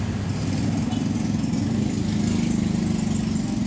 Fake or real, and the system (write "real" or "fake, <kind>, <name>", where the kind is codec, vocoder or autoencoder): real